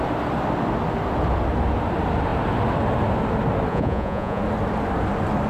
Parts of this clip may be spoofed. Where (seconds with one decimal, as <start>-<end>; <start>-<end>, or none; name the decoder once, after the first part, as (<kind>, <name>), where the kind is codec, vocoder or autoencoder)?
3.7-4.4 (vocoder, Vocos)